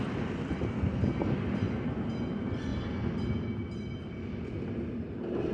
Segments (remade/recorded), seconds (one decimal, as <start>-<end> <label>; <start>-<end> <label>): 0.0-5.5 recorded